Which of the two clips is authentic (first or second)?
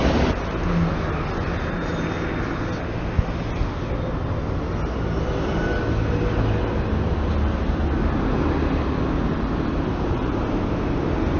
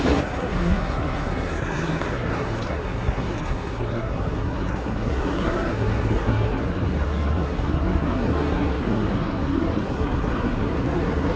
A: first